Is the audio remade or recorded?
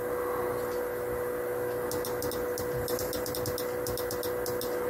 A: recorded